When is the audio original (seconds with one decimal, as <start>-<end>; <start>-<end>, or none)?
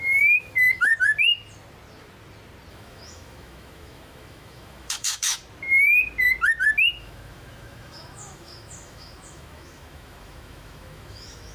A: 0.9-2.7; 5.4-6.9